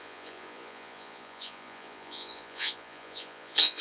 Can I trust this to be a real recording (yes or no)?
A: no